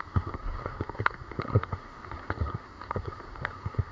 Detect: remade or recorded remade